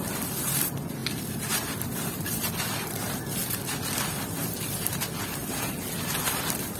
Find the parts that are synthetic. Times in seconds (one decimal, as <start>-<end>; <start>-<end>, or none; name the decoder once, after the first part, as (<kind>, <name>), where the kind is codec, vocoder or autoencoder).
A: 0.0-5.4 (vocoder, BigVGAN v2); 6.3-6.8